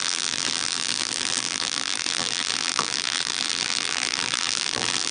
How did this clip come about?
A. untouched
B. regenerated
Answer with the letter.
B